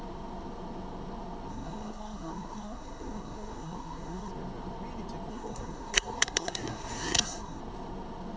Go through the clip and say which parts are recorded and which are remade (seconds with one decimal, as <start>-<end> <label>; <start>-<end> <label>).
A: 0.0-1.5 recorded; 1.5-4.3 remade; 4.3-5.3 recorded; 5.3-7.6 remade; 7.6-8.4 recorded